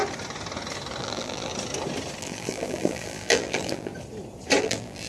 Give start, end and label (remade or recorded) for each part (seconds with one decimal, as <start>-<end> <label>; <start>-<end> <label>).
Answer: 0.0-1.0 recorded; 1.0-1.5 remade; 1.5-2.2 recorded; 2.2-3.9 remade; 3.9-4.6 recorded; 4.6-5.1 remade